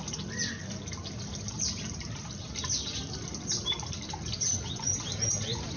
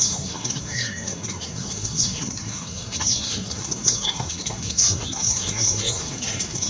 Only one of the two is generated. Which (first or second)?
second